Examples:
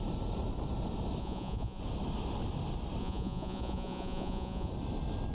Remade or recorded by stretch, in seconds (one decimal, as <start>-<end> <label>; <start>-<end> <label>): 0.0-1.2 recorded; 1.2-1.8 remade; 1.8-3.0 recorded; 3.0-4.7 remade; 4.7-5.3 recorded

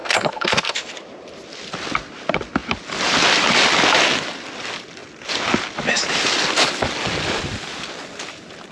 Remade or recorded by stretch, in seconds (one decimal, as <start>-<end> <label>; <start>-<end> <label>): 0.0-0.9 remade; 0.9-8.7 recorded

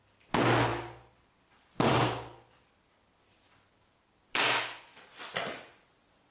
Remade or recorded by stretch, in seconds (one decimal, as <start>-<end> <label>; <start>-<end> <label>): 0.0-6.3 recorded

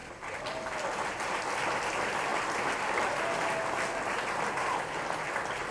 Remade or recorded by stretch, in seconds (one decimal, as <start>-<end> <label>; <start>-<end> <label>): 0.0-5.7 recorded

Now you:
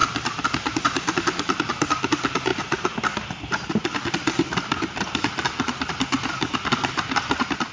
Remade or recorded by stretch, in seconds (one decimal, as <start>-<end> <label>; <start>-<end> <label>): 0.0-7.7 recorded